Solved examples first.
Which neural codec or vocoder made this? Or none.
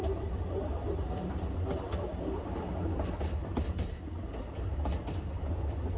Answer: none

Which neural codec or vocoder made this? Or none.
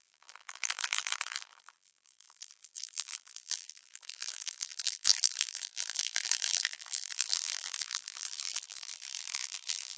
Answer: vocoder, BigVGAN v2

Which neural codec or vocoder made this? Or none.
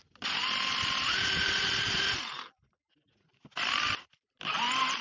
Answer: vocoder, BigVGAN v2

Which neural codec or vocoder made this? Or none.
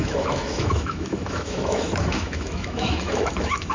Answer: autoencoder, DAC-VAE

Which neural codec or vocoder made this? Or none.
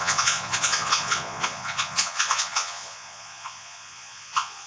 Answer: vocoder, Vocos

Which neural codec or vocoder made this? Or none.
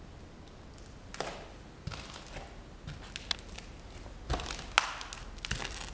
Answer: none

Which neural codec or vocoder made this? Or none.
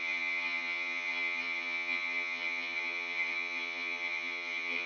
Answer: vocoder, HiFi-GAN